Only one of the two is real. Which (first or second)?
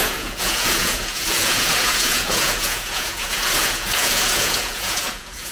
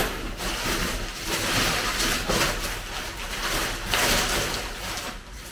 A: second